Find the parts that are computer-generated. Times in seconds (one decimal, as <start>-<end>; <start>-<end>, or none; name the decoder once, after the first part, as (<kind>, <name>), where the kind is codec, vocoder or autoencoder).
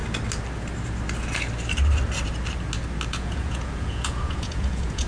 3.1-5.1 (vocoder, Vocos)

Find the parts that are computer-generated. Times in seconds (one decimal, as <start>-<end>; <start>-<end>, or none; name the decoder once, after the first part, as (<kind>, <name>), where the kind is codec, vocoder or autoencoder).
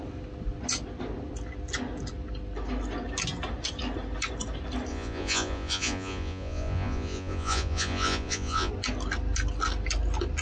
4.9-8.7 (vocoder, Vocos)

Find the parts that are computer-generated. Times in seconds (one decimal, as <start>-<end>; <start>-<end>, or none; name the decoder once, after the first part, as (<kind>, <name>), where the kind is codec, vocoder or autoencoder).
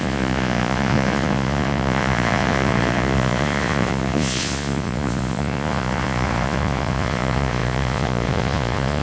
0.0-9.0 (vocoder, Vocos)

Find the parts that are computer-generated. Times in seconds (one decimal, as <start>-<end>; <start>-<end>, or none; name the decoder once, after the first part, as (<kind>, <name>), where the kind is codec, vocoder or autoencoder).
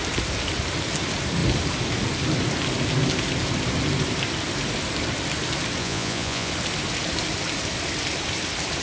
5.8-6.5 (vocoder, Vocos)